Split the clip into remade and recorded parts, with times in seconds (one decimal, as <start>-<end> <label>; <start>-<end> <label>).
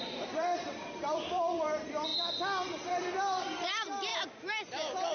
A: 0.0-2.1 remade; 2.1-2.8 recorded; 2.8-4.1 remade; 4.1-5.1 recorded